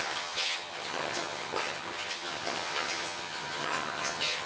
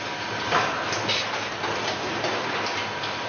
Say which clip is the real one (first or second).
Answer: second